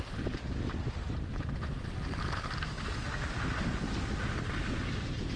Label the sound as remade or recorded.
recorded